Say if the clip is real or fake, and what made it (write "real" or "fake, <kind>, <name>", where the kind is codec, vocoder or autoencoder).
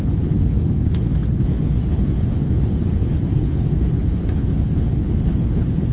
fake, codec, HILCodec